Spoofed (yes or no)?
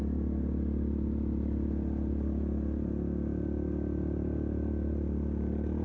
no